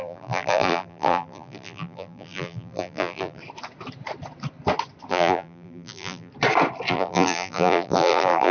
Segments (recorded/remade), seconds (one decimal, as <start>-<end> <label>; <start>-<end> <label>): 0.0-3.4 remade; 3.4-5.1 recorded; 5.1-6.3 remade; 6.3-6.9 recorded; 6.9-8.5 remade